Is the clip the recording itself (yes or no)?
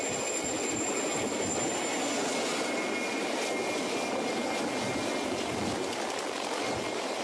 yes